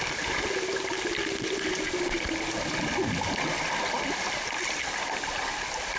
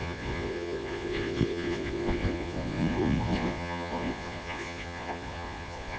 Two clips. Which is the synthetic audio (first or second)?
second